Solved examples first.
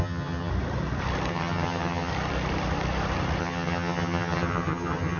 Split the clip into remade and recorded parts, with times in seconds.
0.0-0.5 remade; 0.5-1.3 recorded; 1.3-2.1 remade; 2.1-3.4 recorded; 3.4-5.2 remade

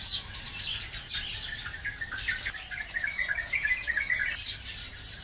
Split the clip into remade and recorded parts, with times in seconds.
0.0-3.4 recorded; 3.4-4.3 remade; 4.3-5.2 recorded

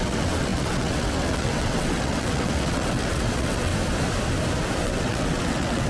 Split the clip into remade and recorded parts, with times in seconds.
0.0-3.7 remade; 3.7-4.8 recorded; 4.8-5.9 remade

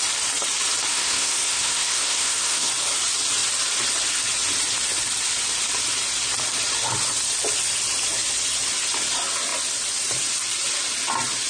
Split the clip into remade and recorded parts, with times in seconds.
0.0-0.9 recorded; 0.9-2.7 remade; 2.7-11.5 recorded